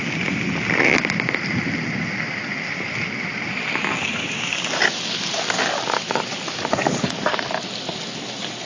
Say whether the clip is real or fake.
real